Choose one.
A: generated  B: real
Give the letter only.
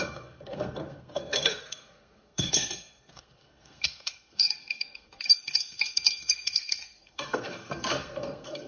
A